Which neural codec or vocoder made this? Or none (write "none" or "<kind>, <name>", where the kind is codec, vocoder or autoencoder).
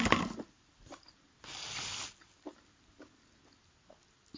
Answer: none